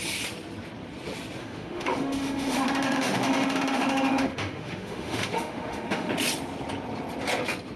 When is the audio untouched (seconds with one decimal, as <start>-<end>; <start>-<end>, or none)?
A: 0.0-1.4; 6.1-7.8